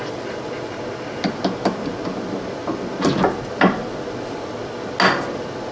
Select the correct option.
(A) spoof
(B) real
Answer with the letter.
B